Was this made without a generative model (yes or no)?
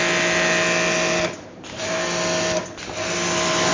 yes